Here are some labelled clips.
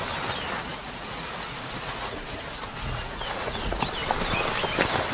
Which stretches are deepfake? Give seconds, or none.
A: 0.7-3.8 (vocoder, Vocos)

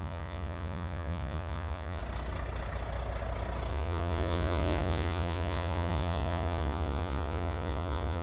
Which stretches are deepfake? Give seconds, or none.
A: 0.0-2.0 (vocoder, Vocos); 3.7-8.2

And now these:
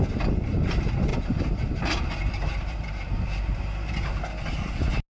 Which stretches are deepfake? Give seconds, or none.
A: 1.1-4.2 (vocoder, BigVGAN v2)

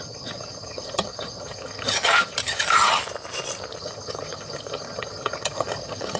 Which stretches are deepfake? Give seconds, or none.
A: 0.0-3.0 (vocoder, HiFi-GAN); 3.8-6.2

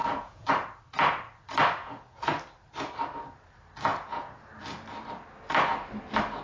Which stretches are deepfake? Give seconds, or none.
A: 0.0-0.5 (vocoder, Vocos); 1.8-2.4; 3.9-4.5

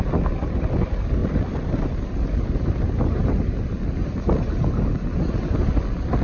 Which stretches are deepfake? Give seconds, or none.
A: 1.2-2.1 (vocoder, BigVGAN v2)

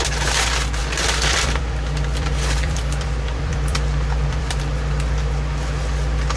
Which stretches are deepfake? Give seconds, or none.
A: 0.8-4.6 (vocoder, BigVGAN v2)